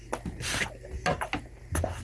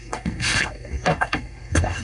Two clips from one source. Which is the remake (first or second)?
second